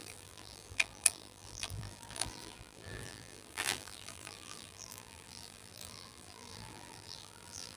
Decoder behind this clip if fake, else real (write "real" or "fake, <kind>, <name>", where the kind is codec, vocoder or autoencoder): fake, vocoder, BigVGAN v2